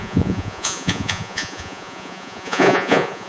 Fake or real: fake